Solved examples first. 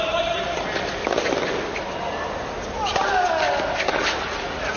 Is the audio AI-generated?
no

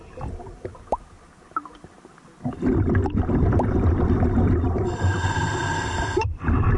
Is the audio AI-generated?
yes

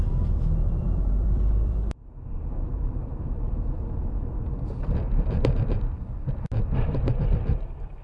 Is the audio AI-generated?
yes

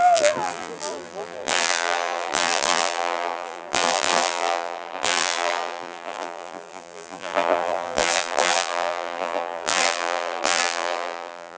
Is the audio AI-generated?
yes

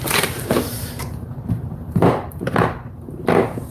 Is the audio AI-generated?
yes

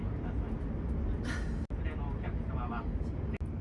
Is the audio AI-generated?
no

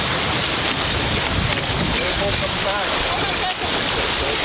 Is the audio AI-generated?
no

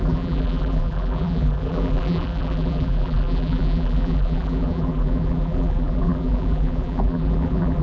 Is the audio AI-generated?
yes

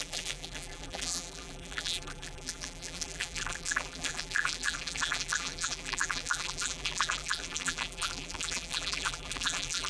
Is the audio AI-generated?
yes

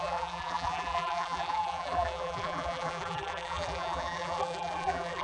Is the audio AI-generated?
yes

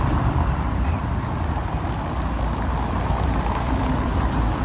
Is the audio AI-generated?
yes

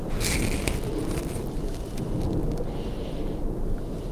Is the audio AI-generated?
no